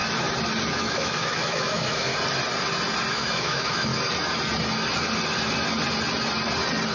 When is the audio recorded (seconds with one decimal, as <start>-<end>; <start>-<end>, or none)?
0.0-0.7; 2.1-3.1; 3.9-6.9